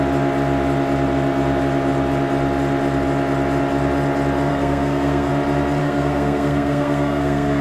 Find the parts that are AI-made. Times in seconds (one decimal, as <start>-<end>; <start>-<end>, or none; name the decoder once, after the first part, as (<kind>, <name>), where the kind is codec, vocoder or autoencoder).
4.5-5.3 (codec, SNAC); 5.8-7.6